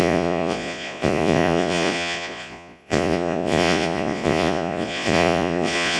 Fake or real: fake